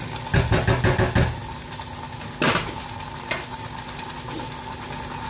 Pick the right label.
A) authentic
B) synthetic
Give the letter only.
A